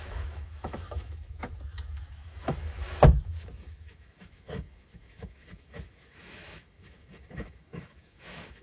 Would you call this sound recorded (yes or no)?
no